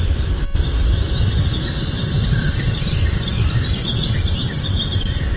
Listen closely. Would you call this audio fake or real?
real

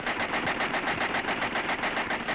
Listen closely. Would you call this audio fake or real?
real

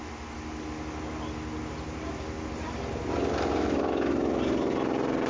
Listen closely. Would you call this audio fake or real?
real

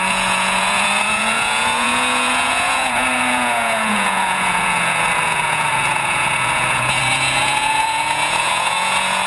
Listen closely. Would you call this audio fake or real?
fake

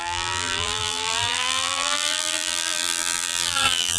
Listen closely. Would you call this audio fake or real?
fake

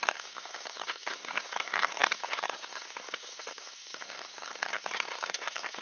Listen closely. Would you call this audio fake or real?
fake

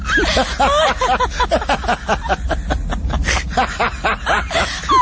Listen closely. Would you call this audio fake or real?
real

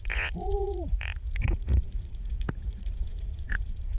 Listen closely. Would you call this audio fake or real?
fake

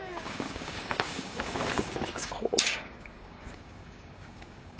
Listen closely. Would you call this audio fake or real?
fake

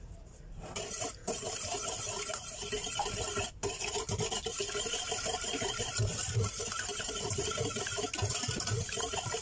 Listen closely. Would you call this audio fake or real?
fake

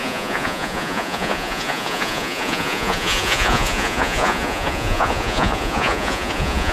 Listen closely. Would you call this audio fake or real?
fake